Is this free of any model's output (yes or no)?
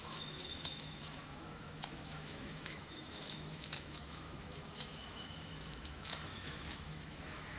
no